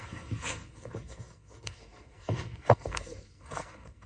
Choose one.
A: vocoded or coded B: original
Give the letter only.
A